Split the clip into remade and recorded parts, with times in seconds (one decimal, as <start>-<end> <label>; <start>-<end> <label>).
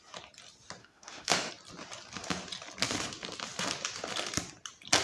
0.0-0.8 recorded; 0.8-1.5 remade; 1.5-5.0 recorded